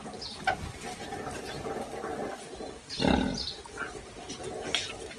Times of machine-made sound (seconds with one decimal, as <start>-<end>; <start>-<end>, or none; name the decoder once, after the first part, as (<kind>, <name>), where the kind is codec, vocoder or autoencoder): none